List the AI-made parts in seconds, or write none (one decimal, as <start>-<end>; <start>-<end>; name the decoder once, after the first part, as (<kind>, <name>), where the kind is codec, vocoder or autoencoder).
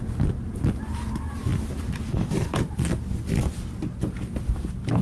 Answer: none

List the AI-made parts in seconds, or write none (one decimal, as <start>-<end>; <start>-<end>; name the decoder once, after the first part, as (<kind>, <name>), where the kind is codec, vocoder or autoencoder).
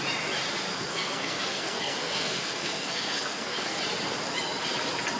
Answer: 0.7-3.8 (codec, SNAC)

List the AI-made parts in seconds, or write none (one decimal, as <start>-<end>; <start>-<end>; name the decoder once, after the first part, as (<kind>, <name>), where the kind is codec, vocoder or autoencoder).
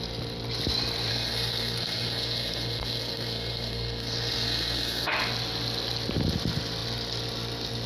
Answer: 1.1-5.1 (codec, SNAC)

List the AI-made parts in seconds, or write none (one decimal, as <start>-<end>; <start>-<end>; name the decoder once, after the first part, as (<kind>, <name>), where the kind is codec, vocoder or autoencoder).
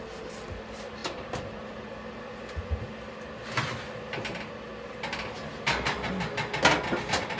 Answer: none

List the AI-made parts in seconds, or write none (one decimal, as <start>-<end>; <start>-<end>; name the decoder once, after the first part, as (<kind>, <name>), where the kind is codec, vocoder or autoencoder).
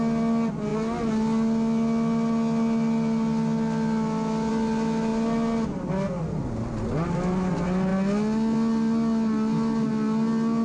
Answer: none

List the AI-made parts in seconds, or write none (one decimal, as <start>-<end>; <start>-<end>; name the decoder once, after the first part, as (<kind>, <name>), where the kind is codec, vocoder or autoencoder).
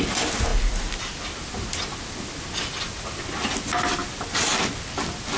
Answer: none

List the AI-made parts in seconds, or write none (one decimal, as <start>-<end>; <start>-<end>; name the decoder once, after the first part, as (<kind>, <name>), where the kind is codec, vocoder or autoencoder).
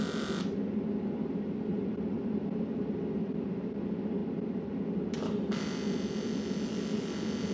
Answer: none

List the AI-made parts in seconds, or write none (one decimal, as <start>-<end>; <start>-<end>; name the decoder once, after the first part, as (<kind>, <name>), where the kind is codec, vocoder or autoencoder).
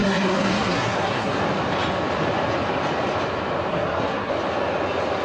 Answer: 0.0-1.4 (codec, SNAC); 3.7-4.3